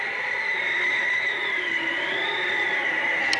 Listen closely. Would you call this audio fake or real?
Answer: real